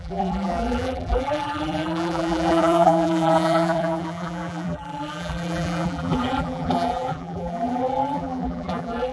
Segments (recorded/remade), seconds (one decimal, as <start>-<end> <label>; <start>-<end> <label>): 0.0-9.1 remade